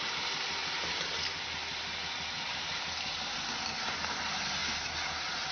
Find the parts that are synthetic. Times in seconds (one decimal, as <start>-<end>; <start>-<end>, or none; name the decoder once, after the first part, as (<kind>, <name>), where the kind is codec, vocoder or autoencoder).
none